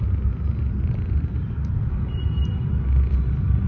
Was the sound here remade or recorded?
recorded